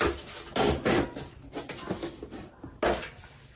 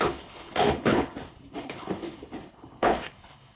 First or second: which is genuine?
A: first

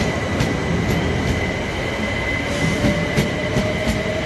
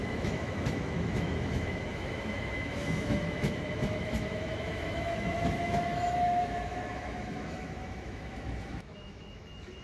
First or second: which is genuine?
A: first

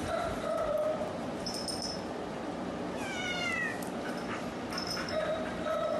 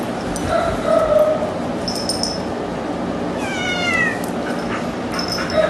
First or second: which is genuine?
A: second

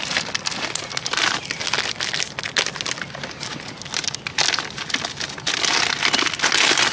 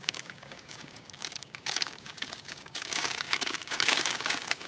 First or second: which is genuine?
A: first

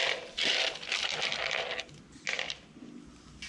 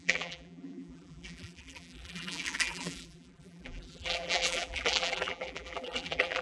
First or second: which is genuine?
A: first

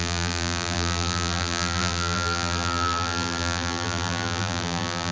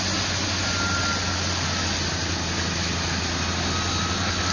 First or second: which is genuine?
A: second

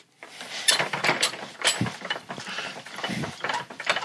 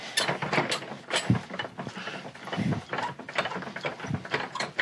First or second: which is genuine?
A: second